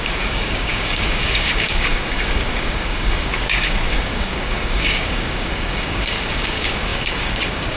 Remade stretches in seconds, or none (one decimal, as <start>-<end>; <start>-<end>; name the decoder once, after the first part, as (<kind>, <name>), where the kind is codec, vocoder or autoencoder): 0.0-7.8 (codec, DAC)